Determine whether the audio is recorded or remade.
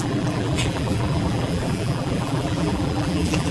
remade